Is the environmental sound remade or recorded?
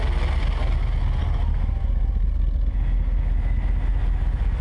recorded